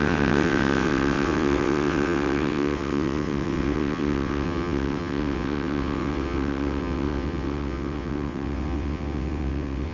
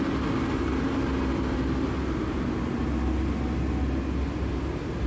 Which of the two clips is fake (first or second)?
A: first